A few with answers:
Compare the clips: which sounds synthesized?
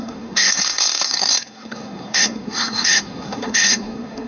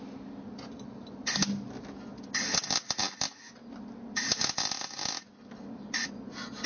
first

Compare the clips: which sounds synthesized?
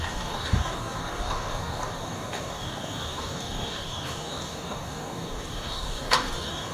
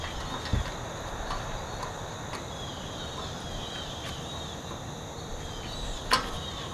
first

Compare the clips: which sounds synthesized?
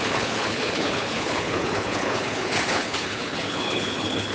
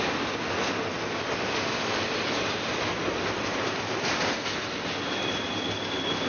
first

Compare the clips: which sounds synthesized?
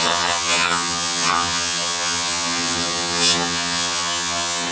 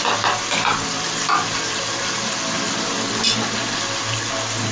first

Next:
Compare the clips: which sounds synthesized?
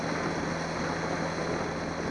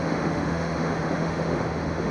second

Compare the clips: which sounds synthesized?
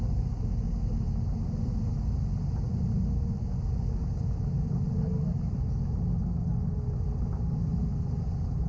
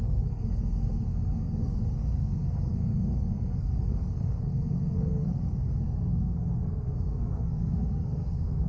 second